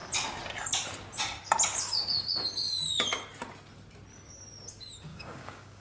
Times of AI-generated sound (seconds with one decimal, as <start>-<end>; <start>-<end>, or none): 5.1-5.8